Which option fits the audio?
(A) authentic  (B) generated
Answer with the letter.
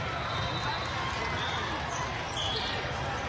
A